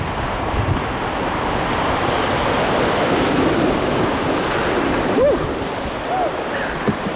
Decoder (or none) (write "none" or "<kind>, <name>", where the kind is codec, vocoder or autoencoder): none